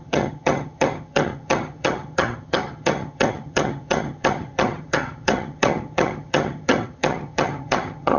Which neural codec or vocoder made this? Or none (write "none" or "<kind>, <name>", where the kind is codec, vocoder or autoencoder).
vocoder, HiFi-GAN